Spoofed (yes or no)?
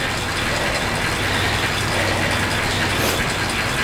no